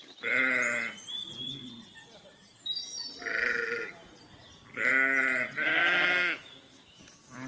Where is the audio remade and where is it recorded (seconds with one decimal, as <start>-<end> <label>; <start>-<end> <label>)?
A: 0.0-5.8 recorded; 5.8-7.0 remade; 7.0-7.5 recorded